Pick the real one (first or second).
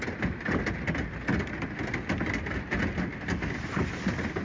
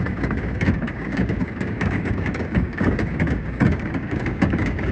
first